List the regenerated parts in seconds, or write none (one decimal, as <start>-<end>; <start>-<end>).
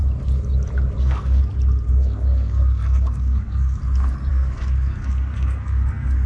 1.0-1.4; 1.9-3.8; 4.3-6.3